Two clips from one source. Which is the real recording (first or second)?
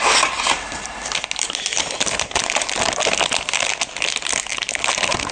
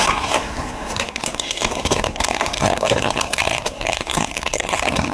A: first